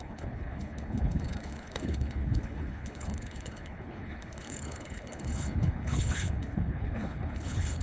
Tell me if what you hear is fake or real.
fake